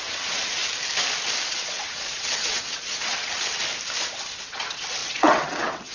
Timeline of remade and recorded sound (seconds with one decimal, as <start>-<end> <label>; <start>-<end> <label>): 0.0-0.6 remade; 0.6-1.5 recorded; 1.5-3.6 remade; 3.6-4.3 recorded; 4.3-5.9 remade